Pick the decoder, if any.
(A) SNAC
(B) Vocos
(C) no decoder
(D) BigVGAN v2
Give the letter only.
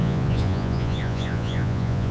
B